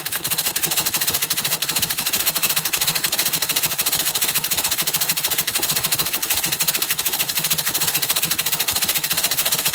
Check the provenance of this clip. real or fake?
fake